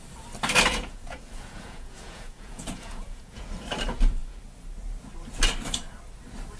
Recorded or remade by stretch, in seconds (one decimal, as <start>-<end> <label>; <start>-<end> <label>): 0.0-0.7 recorded; 0.7-3.5 remade; 3.5-6.6 recorded